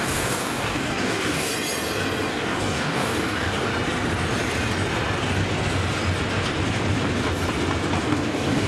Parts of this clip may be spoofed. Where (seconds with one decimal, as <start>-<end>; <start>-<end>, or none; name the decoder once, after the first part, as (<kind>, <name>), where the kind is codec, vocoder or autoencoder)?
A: 0.0-1.5 (codec, DAC); 2.3-3.7; 8.0-8.7